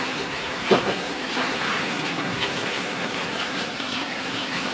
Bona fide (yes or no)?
no